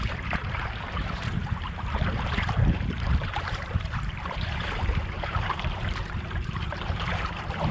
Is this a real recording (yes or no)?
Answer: no